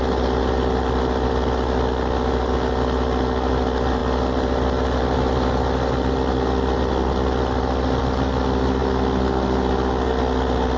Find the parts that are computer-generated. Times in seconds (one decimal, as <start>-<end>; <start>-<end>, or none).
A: none